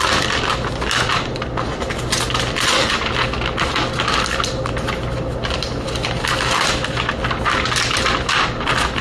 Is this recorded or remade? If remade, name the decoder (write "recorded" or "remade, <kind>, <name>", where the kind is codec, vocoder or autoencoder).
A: recorded